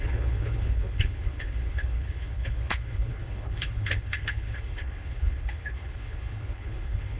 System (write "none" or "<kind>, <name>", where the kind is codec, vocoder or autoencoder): codec, HILCodec